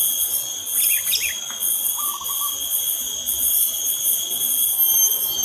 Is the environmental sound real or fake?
real